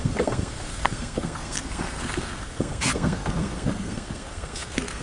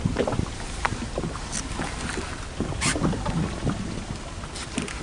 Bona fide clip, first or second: second